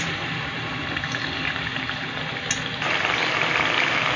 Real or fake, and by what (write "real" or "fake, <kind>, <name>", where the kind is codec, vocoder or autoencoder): real